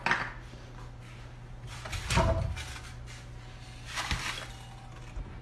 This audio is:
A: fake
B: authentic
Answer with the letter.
B